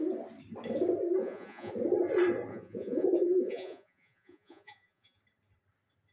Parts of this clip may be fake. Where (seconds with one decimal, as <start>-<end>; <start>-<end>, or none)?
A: 1.2-1.7; 2.5-5.2